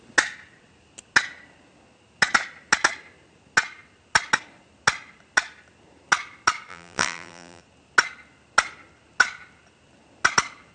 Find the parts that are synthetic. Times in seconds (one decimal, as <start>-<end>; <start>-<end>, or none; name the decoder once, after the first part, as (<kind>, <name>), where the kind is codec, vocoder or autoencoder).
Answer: 6.7-7.6 (vocoder, BigVGAN v2)